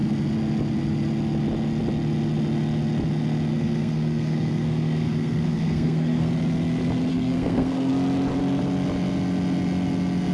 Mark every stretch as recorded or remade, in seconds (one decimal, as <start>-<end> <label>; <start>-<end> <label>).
0.0-3.5 recorded; 3.5-6.3 remade; 6.3-7.1 recorded; 7.1-7.9 remade; 7.9-10.3 recorded